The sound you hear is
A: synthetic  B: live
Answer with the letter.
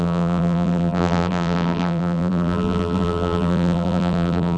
A